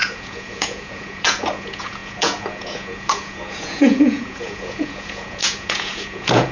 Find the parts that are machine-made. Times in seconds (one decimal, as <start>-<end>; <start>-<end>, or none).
0.0-6.5